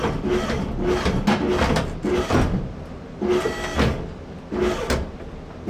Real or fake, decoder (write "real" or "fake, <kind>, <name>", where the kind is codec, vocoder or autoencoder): real